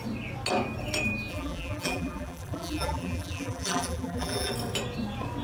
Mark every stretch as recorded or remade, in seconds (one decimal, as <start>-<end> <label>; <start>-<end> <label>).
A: 0.0-1.3 recorded; 1.3-4.5 remade; 4.5-5.4 recorded